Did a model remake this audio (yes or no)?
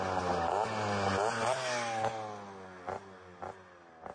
no